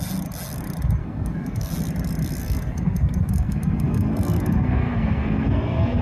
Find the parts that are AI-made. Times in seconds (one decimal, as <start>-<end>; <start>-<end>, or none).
1.0-1.7; 2.4-6.0